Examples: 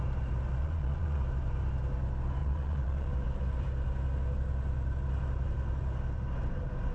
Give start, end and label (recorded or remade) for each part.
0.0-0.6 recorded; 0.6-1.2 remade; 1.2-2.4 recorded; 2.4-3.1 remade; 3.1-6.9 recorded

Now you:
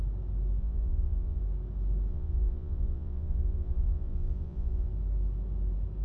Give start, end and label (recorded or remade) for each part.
0.0-0.6 recorded; 0.6-1.4 remade; 1.4-2.1 recorded; 2.1-4.9 remade; 4.9-6.0 recorded

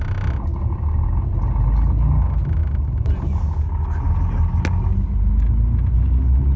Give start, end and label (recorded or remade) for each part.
0.0-6.6 recorded